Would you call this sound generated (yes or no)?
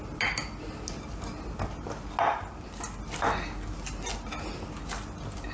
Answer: no